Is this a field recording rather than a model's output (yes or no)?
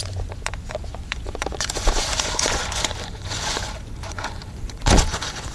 no